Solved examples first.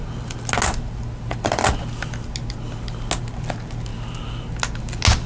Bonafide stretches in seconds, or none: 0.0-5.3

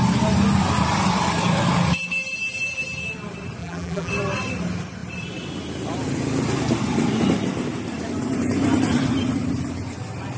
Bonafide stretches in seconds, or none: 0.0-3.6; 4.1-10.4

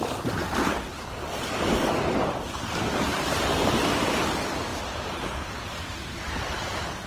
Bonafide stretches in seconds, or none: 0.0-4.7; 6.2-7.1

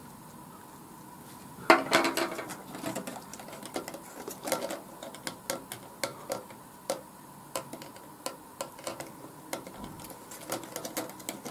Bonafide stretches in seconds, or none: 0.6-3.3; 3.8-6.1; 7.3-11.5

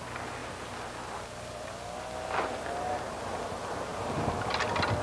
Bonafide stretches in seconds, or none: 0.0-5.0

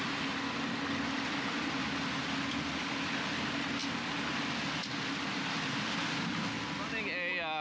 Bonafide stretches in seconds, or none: 0.0-7.6

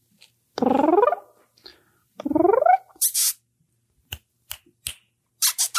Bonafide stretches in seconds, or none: 0.0-5.8